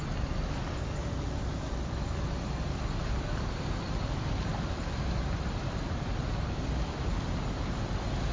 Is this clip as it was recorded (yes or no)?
no